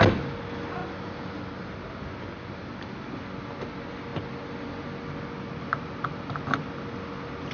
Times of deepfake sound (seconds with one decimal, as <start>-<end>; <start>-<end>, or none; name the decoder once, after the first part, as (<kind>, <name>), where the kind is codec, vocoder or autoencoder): none